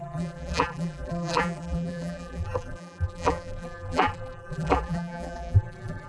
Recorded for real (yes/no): no